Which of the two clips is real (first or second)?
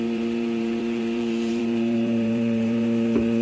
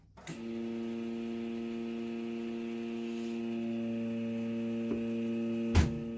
second